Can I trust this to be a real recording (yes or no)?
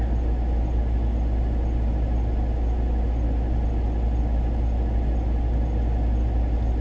yes